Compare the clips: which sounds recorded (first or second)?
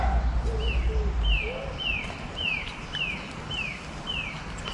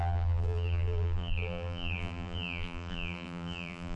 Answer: first